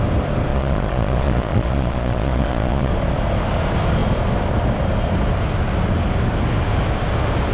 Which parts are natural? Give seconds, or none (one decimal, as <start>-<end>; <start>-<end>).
0.0-0.5; 2.9-7.5